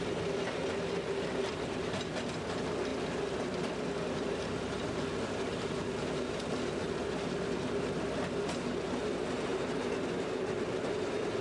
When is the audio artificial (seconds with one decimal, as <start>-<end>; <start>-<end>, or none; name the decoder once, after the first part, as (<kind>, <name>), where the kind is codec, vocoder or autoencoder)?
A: none